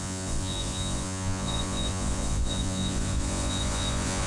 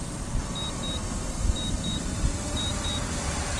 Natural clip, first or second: second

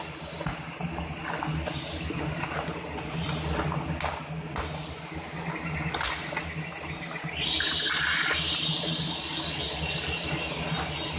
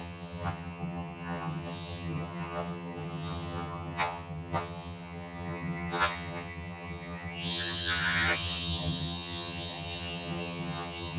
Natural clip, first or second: first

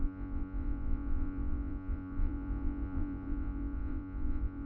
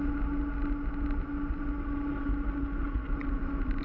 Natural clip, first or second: second